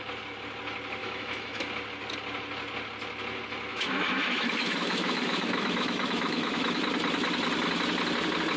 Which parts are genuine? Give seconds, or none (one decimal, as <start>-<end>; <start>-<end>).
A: 0.0-1.0; 1.7-3.7; 6.8-8.6